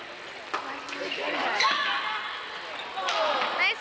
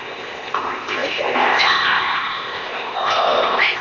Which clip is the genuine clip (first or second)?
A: first